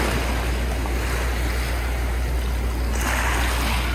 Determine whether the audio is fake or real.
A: real